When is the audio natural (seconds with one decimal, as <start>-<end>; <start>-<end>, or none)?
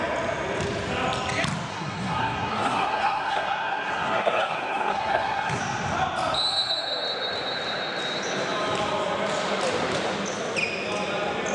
0.0-1.7; 5.6-11.5